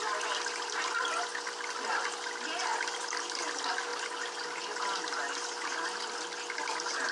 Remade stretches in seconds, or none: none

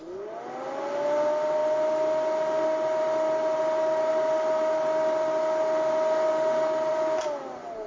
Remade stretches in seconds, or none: none

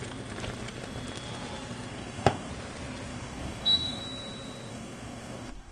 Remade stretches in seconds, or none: 1.9-2.5 (codec, DAC); 3.1-4.0; 4.7-5.7

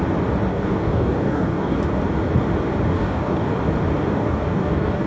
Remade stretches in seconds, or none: 0.5-1.8 (codec, DAC); 2.9-3.5; 4.0-5.1

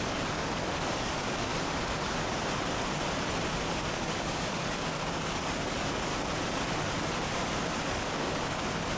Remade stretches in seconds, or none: 0.0-1.5 (codec, DAC); 3.8-6.1; 7.8-9.0

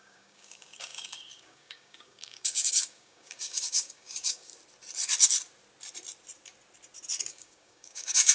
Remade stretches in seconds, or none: 0.0-4.5 (codec, DAC); 7.3-8.3

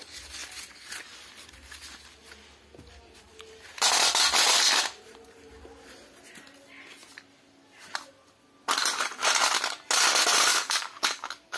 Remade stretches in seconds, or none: 10.5-11.6 (codec, DAC)